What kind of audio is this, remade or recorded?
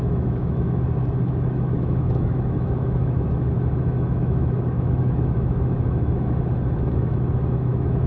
remade